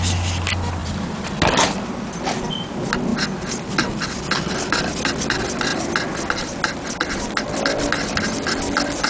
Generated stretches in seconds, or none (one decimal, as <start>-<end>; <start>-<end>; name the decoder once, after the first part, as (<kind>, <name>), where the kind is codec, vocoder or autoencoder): 0.8-1.3 (vocoder, BigVGAN v2)